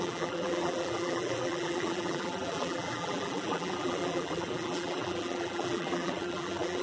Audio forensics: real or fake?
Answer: fake